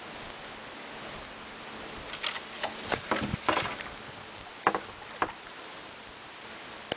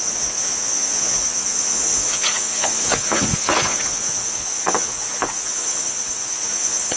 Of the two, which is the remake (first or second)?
second